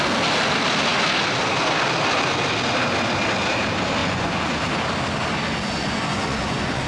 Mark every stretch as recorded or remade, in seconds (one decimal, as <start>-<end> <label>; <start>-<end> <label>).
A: 0.0-4.0 recorded; 4.0-4.6 remade; 4.6-5.8 recorded; 5.8-6.9 remade